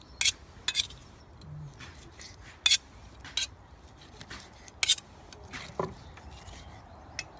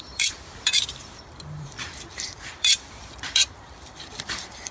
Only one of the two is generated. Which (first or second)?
second